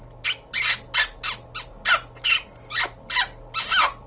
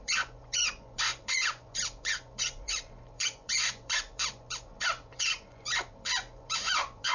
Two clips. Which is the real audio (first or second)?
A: first